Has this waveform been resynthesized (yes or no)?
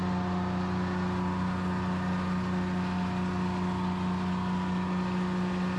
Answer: no